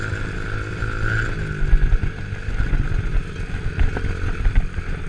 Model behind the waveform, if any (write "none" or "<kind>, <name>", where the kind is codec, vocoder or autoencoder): none